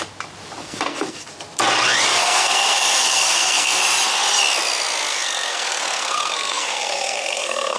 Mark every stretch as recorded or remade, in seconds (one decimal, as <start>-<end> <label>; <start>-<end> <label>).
0.0-0.6 recorded; 0.6-1.3 remade; 1.3-2.1 recorded; 2.1-3.8 remade; 3.8-5.1 recorded; 5.1-7.8 remade